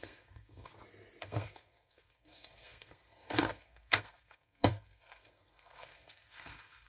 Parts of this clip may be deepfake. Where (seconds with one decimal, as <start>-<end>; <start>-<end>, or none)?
0.0-0.7; 1.2-6.9